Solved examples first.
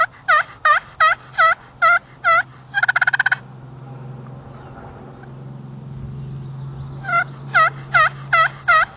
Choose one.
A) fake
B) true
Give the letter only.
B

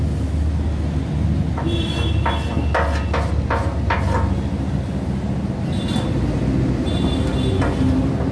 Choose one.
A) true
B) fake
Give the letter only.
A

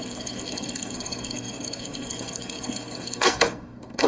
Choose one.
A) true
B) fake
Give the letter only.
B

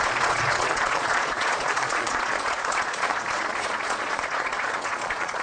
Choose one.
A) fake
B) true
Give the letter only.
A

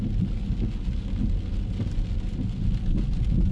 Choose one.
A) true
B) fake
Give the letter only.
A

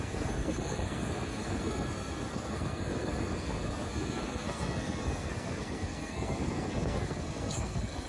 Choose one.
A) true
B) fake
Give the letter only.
B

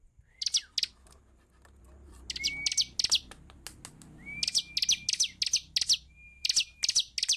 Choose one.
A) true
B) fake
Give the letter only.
A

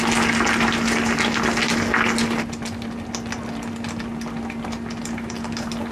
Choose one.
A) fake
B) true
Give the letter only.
B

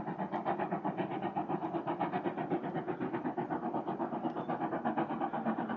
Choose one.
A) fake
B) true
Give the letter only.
B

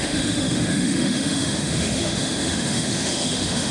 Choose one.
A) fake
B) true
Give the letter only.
A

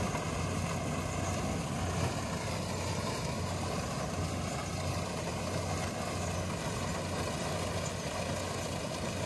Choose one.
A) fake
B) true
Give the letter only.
B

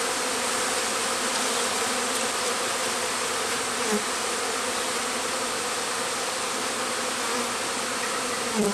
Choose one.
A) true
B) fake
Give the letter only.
A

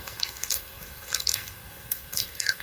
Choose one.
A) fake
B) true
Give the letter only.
A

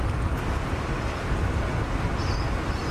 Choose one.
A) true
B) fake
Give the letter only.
A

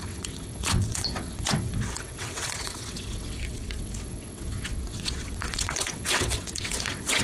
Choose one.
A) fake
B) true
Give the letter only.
A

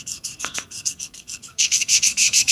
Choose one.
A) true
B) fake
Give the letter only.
B